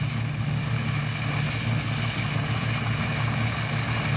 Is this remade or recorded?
recorded